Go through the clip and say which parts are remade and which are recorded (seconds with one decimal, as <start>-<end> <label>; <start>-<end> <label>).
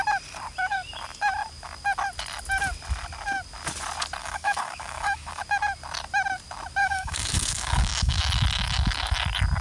0.0-4.2 recorded; 4.2-5.4 remade; 5.4-6.8 recorded; 6.8-8.2 remade; 8.2-9.6 recorded